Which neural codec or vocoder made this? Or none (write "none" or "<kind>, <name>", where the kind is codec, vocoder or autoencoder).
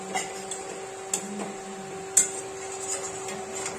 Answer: none